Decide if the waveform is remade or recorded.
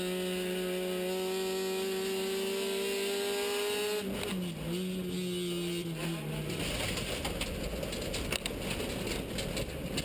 recorded